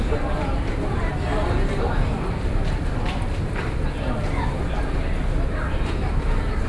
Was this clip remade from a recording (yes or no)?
no